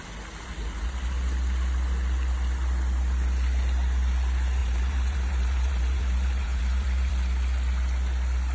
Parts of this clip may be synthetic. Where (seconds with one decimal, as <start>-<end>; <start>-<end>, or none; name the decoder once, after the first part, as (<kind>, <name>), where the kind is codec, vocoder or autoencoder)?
4.6-7.1 (vocoder, BigVGAN v2)

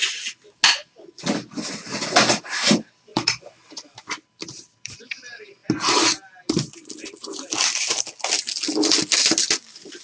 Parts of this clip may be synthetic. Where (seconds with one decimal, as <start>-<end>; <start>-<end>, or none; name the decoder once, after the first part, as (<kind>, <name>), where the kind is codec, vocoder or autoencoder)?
3.1-5.1 (vocoder, BigVGAN v2); 5.6-8.0

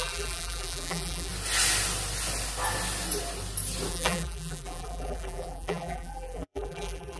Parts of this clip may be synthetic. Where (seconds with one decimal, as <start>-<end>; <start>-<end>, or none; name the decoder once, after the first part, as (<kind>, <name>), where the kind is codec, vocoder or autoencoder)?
0.0-1.3 (vocoder, BigVGAN v2); 3.9-7.2

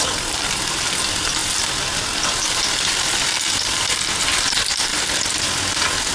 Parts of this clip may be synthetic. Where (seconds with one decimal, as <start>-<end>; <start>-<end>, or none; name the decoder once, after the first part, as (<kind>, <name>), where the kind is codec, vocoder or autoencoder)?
none

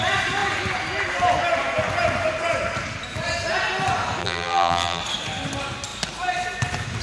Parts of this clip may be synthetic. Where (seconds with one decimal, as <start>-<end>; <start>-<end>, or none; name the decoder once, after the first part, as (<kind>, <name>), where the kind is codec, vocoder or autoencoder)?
4.2-5.0 (vocoder, BigVGAN v2)